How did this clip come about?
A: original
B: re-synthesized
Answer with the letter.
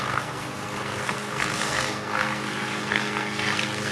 B